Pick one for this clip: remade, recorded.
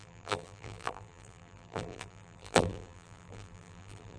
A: remade